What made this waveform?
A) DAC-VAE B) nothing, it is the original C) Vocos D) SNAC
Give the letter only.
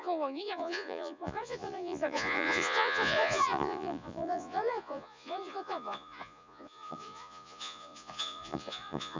C